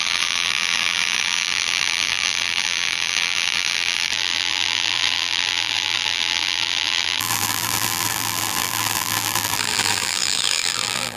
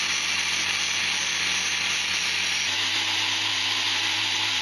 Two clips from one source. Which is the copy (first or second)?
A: first